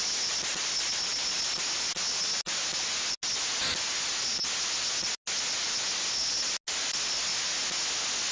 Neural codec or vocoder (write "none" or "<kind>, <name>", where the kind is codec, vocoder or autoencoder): none